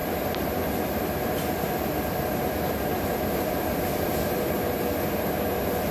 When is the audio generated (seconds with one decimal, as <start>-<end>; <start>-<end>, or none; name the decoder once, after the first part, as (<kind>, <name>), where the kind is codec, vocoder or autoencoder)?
none